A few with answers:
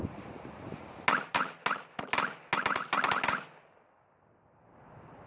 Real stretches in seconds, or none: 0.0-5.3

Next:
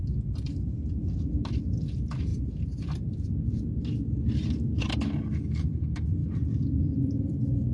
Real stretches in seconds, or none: none

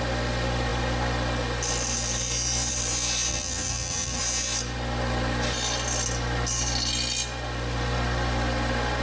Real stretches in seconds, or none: 0.0-3.3; 4.2-9.0

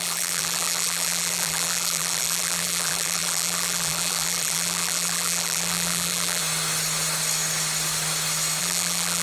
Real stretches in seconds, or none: 6.4-8.6

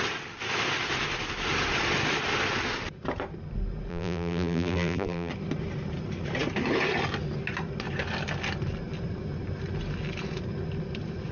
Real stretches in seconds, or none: 0.0-3.9; 5.3-11.3